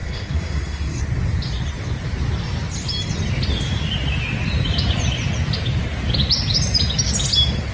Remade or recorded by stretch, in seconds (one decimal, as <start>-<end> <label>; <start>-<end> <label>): 0.0-1.0 remade; 1.0-7.7 recorded